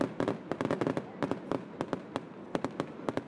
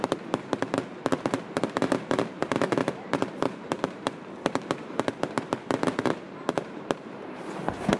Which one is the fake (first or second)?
second